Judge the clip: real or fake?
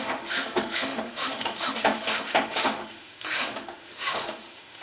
fake